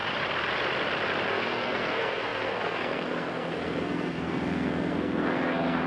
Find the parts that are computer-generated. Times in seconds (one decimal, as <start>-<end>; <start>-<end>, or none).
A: 1.3-5.9